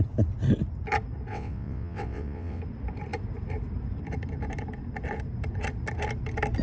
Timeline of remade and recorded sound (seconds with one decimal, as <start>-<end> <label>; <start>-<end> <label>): 0.0-1.3 recorded; 1.3-2.6 remade; 2.6-6.6 recorded